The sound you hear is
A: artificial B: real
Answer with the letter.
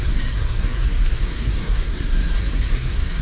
A